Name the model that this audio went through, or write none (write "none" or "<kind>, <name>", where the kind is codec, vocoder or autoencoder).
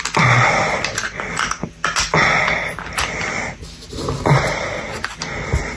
none